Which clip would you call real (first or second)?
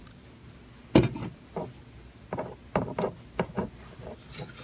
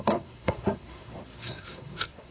first